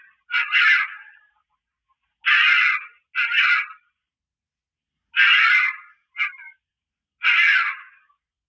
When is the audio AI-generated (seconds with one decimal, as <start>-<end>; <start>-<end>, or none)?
none